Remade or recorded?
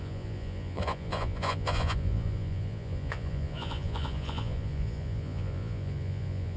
remade